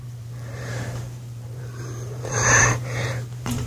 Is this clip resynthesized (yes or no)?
yes